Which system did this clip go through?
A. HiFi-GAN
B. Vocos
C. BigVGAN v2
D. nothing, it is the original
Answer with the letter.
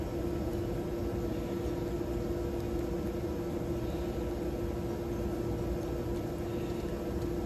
D